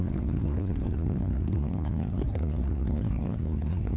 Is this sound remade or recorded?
remade